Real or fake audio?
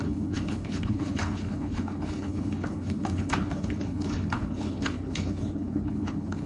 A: fake